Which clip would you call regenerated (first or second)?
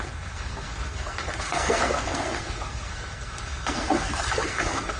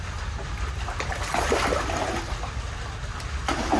first